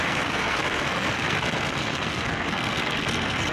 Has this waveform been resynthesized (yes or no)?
yes